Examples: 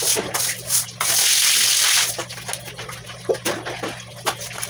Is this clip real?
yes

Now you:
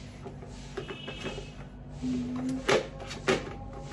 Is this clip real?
yes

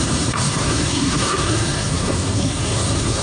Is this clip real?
no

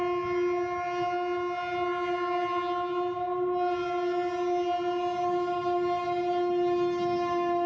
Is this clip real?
yes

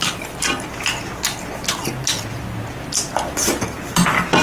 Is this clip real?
yes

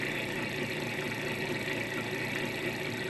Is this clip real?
yes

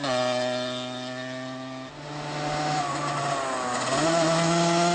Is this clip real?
yes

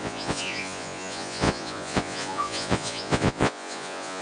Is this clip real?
no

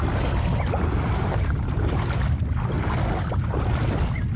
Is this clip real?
yes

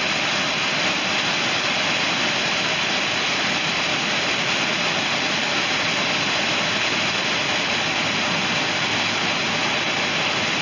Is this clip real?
yes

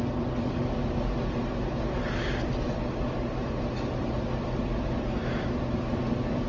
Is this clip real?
yes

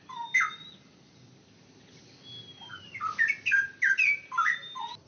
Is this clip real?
yes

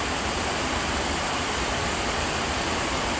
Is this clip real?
no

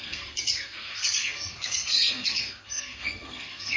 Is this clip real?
no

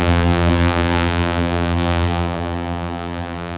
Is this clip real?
no